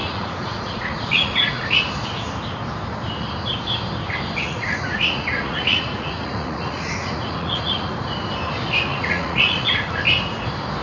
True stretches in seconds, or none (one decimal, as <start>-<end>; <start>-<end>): 1.8-4.4; 7.9-8.9; 9.9-10.8